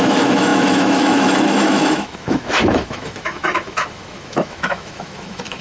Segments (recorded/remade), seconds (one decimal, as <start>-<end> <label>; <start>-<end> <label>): 0.0-5.6 remade